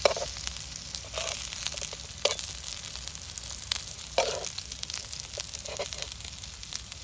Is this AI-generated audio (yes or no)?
no